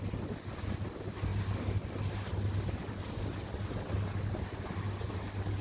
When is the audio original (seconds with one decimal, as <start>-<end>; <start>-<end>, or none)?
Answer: 0.0-5.6